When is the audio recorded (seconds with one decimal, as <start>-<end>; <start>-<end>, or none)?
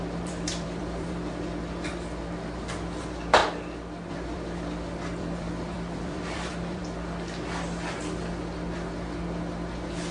1.9-3.0; 3.4-4.1; 6.8-10.1